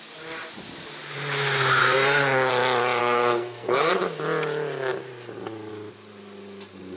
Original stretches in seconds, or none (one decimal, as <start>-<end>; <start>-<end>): 0.0-1.8; 2.5-3.0; 3.9-7.0